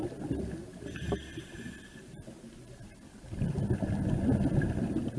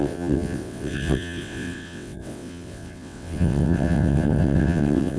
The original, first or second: first